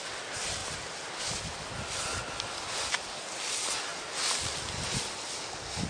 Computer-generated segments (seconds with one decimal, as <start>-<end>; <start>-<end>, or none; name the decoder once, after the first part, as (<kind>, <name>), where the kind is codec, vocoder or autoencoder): none